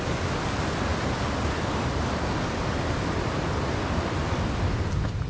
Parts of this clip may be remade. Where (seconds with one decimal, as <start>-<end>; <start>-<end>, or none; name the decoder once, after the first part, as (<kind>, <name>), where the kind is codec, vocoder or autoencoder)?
none